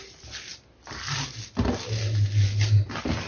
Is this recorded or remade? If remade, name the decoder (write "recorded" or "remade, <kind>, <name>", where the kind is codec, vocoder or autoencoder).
recorded